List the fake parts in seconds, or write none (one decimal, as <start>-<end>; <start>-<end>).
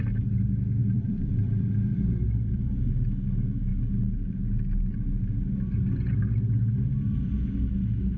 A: 0.8-2.9